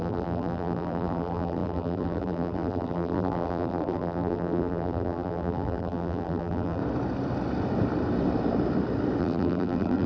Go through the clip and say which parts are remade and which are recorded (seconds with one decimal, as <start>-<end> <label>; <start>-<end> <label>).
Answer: 0.0-6.8 remade; 6.8-9.2 recorded; 9.2-10.1 remade